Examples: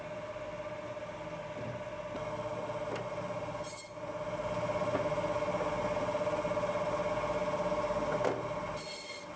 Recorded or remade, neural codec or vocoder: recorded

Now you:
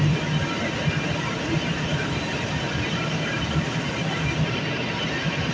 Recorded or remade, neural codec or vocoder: recorded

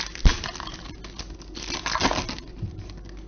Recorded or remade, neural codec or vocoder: recorded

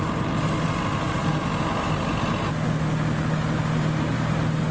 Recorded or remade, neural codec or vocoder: recorded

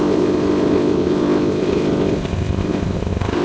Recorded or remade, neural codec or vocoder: remade, codec, ZipCodec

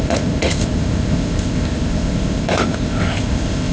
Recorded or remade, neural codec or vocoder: remade, codec, ZipCodec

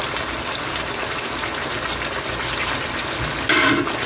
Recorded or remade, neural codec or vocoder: recorded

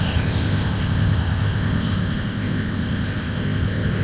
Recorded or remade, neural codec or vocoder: remade, codec, ZipCodec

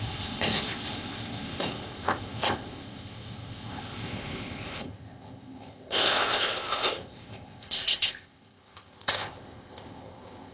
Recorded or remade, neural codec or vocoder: remade, codec, ZipCodec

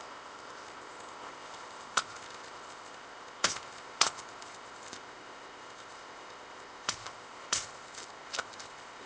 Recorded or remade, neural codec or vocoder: remade, codec, ZipCodec